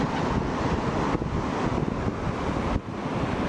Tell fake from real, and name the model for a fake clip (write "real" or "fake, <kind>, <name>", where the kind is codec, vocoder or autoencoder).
real